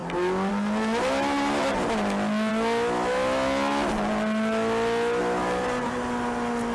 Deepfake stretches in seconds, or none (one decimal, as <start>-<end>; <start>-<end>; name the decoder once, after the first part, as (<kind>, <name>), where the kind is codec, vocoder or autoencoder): none